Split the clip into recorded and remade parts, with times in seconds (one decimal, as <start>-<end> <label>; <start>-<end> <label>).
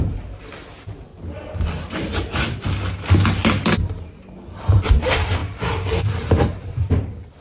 0.0-1.1 remade; 1.1-4.6 recorded; 4.6-7.4 remade